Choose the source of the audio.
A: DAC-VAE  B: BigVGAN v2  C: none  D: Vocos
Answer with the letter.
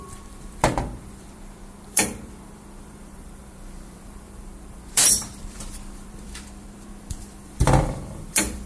B